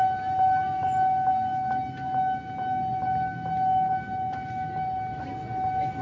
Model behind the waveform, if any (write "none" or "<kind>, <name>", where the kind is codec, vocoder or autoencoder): none